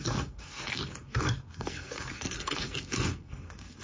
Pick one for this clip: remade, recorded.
remade